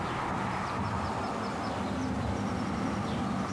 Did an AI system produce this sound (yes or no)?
no